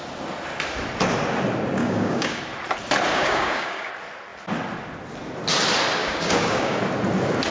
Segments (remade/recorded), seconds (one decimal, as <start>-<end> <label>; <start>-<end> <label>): 0.0-1.8 recorded; 1.8-2.4 remade; 2.4-3.1 recorded; 3.1-3.9 remade; 3.9-6.0 recorded; 6.0-6.8 remade; 6.8-7.5 recorded